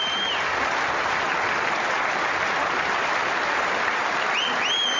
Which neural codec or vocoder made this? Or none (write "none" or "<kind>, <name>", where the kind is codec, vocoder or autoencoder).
none